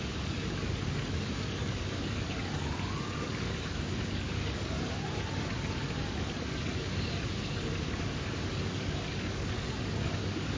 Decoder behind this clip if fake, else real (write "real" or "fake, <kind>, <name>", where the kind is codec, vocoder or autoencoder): fake, codec, DAC